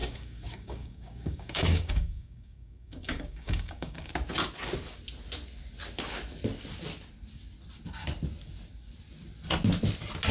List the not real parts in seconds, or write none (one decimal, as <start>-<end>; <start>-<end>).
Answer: 0.0-4.1